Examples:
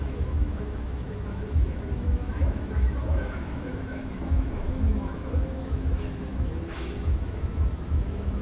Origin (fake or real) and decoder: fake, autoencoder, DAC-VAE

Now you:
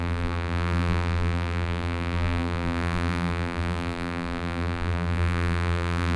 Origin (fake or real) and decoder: fake, vocoder, BigVGAN v2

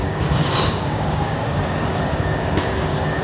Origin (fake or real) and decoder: fake, codec, DAC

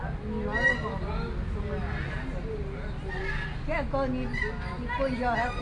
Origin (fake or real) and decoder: real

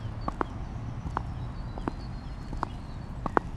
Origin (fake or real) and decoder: real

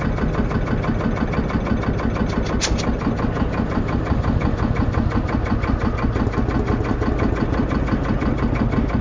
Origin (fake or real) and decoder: real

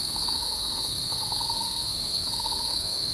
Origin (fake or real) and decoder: fake, codec, SNAC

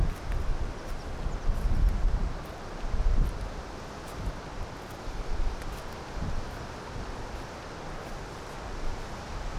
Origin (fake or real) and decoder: real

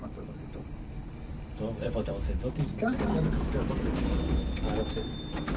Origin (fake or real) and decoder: real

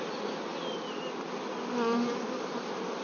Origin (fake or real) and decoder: real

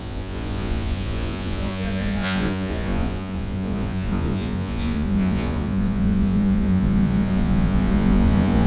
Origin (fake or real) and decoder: fake, vocoder, Vocos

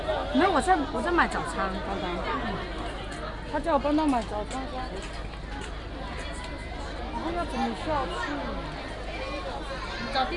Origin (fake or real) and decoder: real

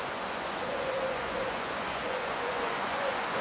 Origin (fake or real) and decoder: fake, vocoder, Vocos